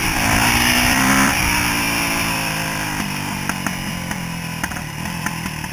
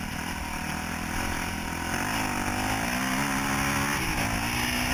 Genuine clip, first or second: second